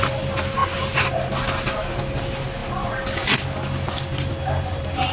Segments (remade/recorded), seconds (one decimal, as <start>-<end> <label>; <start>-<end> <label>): 0.0-5.1 recorded